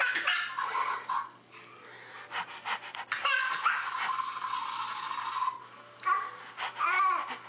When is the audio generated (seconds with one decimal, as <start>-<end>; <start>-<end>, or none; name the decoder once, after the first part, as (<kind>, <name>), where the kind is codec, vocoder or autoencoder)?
none